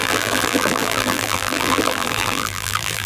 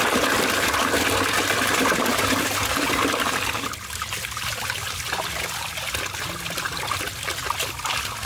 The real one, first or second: second